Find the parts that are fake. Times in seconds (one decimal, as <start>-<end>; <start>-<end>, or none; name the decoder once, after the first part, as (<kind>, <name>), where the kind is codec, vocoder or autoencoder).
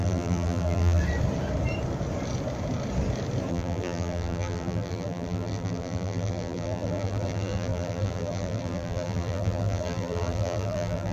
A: 0.0-1.0 (vocoder, BigVGAN v2); 3.5-11.1